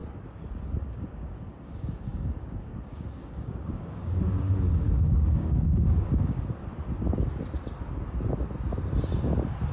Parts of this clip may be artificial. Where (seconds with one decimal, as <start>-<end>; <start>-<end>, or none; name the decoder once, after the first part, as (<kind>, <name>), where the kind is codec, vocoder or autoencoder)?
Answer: 0.8-6.6 (codec, DAC)